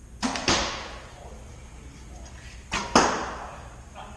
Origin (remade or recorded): recorded